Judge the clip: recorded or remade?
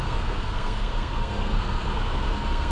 remade